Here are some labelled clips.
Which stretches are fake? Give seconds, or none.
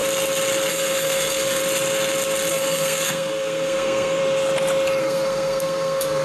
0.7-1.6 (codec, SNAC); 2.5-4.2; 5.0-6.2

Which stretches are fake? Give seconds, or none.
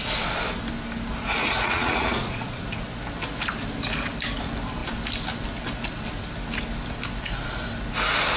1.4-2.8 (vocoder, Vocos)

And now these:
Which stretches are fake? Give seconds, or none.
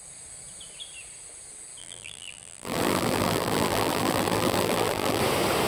1.8-5.2 (vocoder, BigVGAN v2)